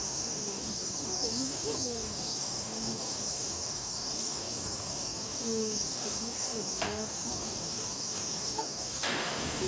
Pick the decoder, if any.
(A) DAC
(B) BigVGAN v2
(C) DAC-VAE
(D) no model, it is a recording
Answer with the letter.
A